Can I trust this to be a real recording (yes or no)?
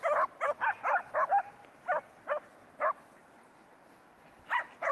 yes